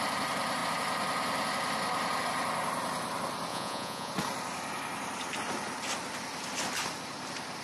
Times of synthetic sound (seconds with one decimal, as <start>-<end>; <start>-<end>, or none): 3.5-4.1